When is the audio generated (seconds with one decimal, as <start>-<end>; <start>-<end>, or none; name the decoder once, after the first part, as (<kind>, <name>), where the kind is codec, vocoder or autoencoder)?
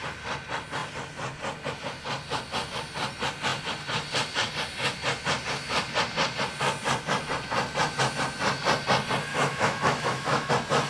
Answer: 9.3-10.5 (autoencoder, DAC-VAE)